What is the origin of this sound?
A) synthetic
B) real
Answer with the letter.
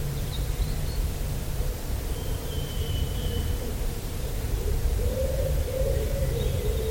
A